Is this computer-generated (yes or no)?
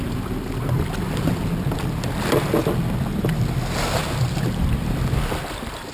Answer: no